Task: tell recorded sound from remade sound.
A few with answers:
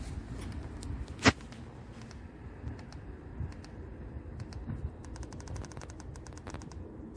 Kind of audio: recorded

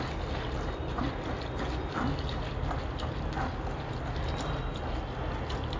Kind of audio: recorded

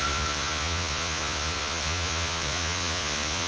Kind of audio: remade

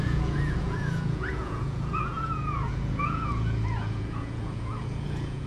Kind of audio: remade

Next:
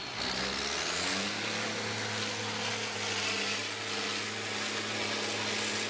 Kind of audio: recorded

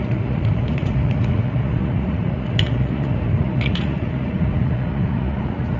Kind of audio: remade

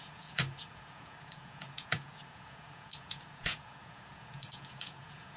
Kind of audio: remade